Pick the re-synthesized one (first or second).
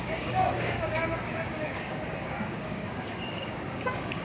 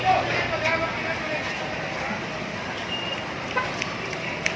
first